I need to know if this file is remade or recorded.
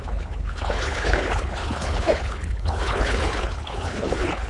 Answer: remade